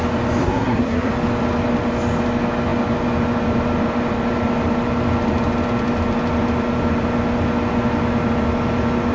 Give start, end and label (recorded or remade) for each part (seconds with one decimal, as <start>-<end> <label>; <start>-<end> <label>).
0.0-0.4 recorded; 0.4-1.1 remade; 1.1-9.1 recorded